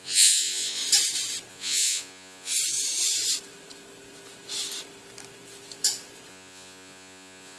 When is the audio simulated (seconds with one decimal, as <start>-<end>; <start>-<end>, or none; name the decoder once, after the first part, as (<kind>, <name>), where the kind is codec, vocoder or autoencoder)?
0.0-0.8 (vocoder, Vocos); 1.5-2.5; 6.3-7.6